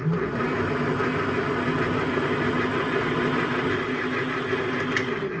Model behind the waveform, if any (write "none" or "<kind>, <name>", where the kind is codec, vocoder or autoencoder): none